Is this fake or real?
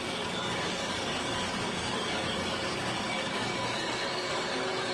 fake